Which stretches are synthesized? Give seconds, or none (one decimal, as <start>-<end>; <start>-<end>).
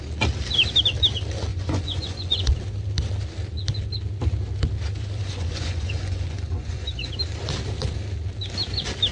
1.5-2.5; 5.2-7.1